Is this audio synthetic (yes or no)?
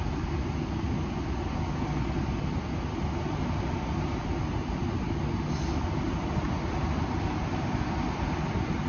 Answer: no